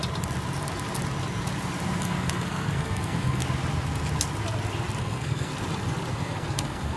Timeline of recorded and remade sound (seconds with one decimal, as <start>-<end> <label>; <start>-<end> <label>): 0.0-2.0 recorded; 2.0-3.4 remade; 3.4-5.0 recorded; 5.0-5.5 remade; 5.5-6.1 recorded; 6.1-7.0 remade